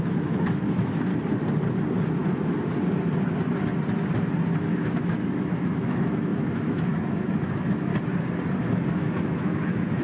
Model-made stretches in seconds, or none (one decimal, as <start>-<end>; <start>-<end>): 0.0-1.1; 4.6-7.9; 8.9-10.0